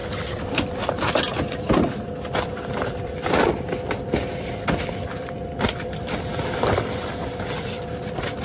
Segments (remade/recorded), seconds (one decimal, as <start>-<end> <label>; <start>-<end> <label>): 0.0-8.4 recorded